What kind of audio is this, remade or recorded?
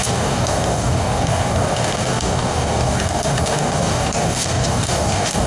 remade